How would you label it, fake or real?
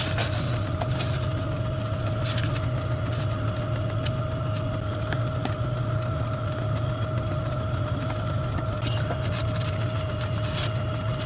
real